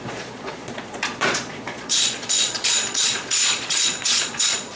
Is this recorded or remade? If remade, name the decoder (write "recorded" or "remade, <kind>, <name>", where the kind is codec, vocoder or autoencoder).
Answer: remade, vocoder, Vocos